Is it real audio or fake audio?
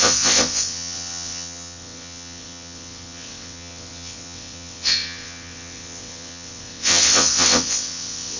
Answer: fake